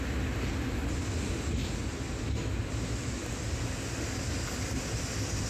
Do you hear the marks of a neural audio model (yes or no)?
no